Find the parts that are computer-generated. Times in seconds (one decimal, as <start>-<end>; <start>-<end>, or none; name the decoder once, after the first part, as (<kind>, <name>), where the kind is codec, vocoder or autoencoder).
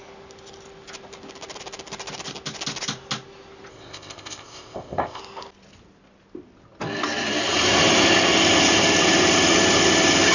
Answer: 3.7-5.2 (codec, ZipCodec)